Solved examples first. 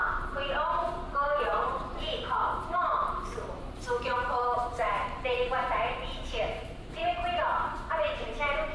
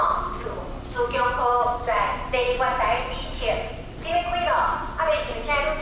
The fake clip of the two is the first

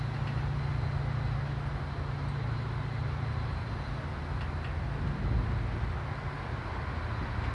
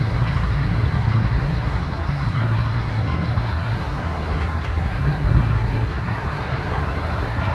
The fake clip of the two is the second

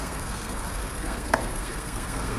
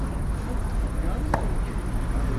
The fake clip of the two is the first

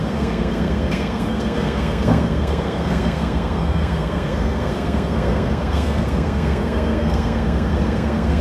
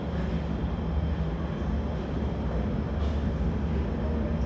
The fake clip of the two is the first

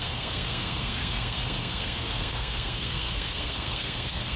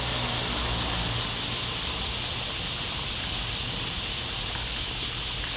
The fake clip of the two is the first